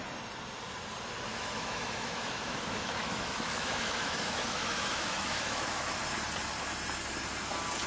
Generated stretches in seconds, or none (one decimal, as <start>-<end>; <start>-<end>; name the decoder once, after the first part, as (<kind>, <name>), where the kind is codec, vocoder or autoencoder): 1.3-6.0 (autoencoder, DAC-VAE)